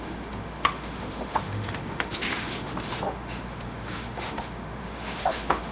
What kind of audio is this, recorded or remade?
remade